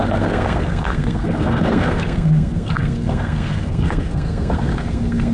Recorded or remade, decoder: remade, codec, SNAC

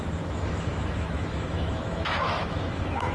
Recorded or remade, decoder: remade, autoencoder, DAC-VAE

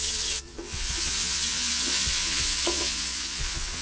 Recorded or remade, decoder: remade, vocoder, Vocos